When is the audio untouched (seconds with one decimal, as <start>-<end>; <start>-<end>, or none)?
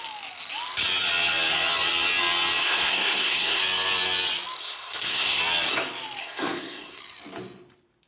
0.0-2.6; 3.6-4.6; 5.4-6.2; 7.0-8.1